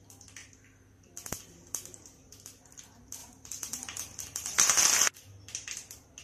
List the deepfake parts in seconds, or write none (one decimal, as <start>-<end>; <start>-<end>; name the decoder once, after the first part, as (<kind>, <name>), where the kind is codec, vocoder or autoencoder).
3.2-4.8 (vocoder, BigVGAN v2)